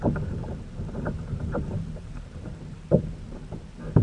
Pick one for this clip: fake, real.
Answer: fake